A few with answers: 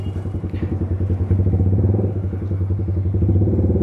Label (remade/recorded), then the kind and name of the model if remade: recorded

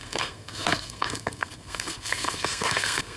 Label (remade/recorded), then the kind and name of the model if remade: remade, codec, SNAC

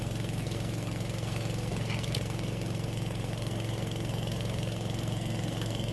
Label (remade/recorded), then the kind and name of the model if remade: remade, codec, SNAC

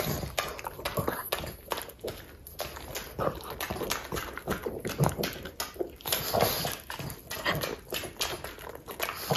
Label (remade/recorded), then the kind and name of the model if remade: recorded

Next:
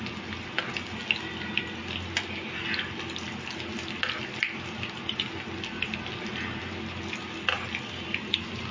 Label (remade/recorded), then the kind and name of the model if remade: recorded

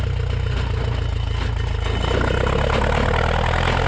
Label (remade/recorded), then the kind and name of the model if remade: recorded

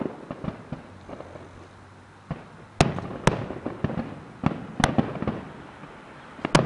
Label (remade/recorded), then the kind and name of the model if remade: recorded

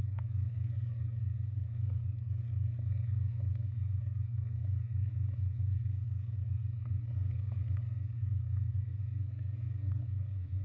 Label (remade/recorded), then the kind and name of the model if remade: remade, codec, SNAC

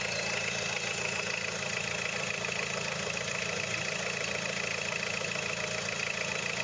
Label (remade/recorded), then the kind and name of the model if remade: recorded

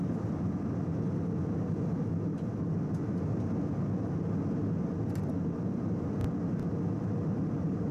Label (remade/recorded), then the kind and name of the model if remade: recorded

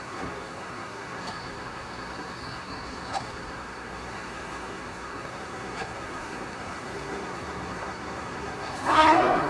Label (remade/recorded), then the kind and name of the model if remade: remade, codec, SNAC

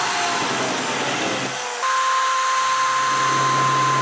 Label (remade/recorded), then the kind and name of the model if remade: recorded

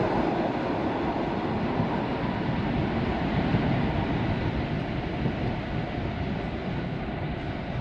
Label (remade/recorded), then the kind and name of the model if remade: recorded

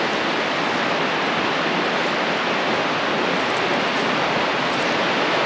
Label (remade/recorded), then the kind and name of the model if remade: recorded